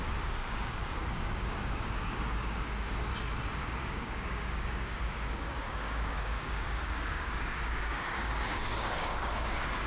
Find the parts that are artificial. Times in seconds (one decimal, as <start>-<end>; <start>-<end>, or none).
0.0-3.1; 3.9-9.9